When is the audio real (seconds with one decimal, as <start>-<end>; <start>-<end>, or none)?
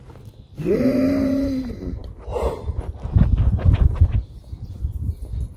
0.0-5.6